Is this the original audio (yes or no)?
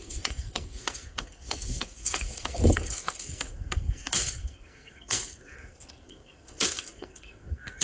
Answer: no